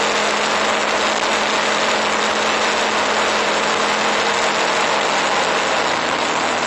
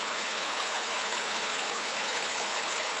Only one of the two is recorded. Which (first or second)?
first